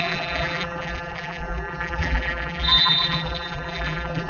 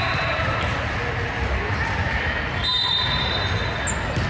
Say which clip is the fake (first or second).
first